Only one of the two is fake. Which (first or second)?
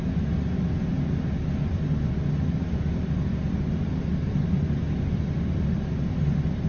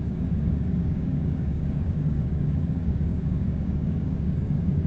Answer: second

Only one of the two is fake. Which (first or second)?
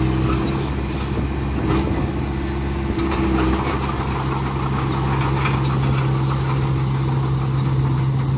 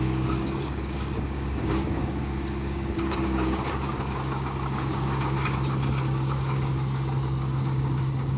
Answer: second